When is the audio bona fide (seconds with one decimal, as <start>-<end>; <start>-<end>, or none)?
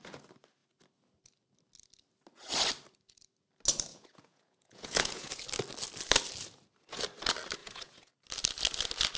0.0-3.9; 5.3-7.6; 8.1-9.2